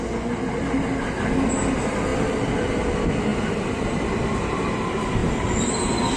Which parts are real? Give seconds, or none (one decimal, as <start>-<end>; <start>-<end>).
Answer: 0.0-5.2